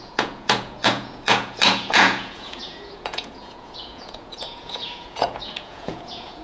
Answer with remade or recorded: remade